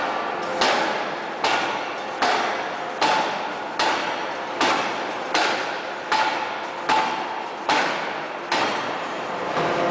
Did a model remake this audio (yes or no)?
no